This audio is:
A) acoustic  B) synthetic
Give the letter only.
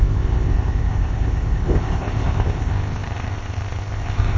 B